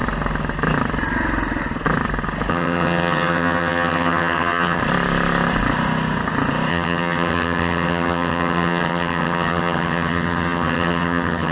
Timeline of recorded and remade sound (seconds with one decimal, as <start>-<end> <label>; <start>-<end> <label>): 0.0-2.5 recorded; 2.5-4.8 remade; 4.8-6.7 recorded; 6.7-11.5 remade